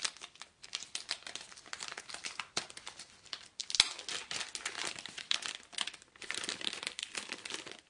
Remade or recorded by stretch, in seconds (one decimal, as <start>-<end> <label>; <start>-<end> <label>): 0.0-3.6 remade; 3.6-4.8 recorded; 4.8-7.9 remade